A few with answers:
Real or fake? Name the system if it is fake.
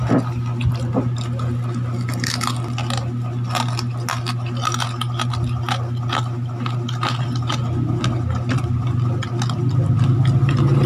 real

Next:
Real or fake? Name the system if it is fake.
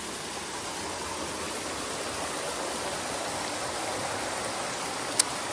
real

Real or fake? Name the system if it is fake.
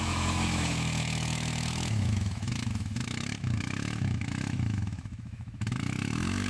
fake, autoencoder, DAC-VAE